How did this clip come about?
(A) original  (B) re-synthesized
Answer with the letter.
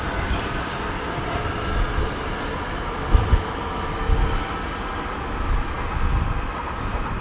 A